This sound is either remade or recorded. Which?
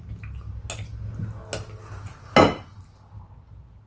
recorded